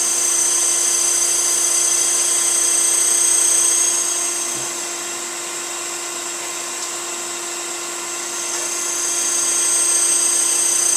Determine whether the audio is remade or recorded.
recorded